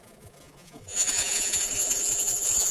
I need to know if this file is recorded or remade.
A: remade